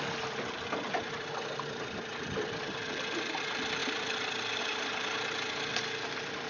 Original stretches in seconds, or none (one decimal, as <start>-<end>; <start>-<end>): 0.0-6.5